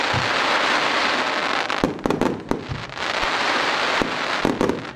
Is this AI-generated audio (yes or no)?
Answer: no